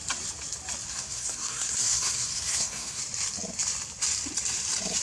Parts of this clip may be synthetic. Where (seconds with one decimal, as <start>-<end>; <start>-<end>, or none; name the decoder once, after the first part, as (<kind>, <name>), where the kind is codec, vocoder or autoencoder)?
0.9-3.0 (codec, SNAC)